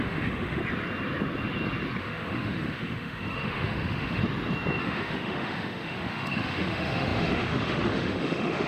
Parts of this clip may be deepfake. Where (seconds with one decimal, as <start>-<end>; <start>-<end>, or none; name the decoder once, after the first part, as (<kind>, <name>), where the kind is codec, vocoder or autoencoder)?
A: 0.0-0.6 (autoencoder, DAC-VAE); 2.0-4.2; 4.8-8.7